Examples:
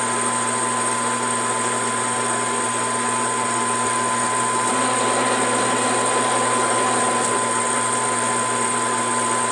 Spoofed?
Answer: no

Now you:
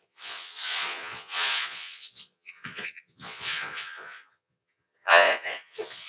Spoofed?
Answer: yes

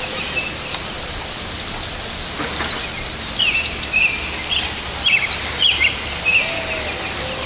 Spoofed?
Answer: no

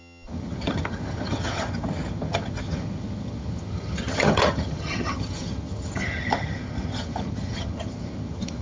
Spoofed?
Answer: yes